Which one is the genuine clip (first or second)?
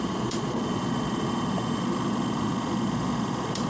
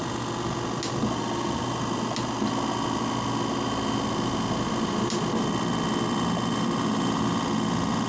second